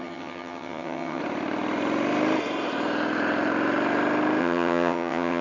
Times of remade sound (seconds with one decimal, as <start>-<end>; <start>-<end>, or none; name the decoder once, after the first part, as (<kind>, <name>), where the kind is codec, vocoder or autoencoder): 0.0-1.2 (vocoder, HiFi-GAN); 4.4-5.4